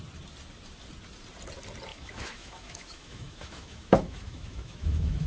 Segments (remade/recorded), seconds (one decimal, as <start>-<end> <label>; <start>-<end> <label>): 0.0-1.9 recorded; 1.9-5.3 remade